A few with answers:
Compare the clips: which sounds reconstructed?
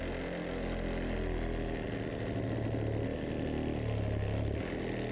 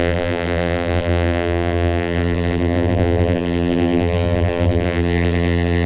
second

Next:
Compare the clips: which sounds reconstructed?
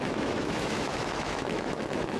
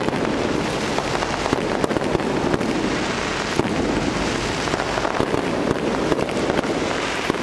first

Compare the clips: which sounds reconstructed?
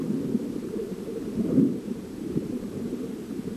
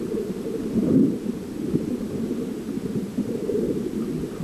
first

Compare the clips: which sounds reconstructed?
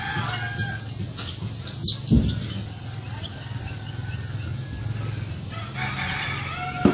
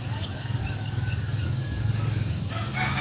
second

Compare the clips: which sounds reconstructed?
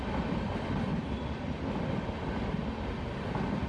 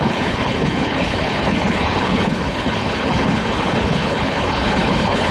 second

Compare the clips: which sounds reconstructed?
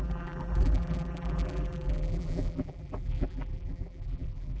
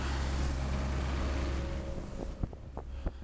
first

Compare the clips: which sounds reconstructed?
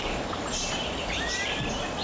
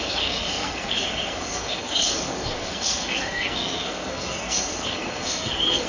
second